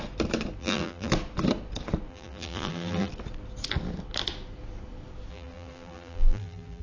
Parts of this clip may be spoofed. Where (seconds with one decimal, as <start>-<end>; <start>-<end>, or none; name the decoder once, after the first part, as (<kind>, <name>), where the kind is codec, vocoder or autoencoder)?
0.6-1.1 (vocoder, BigVGAN v2); 2.1-3.1; 5.3-6.8